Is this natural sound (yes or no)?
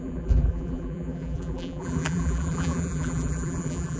no